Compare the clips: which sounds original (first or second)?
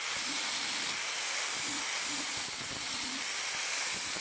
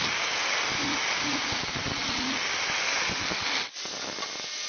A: second